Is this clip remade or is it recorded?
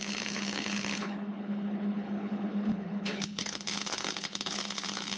remade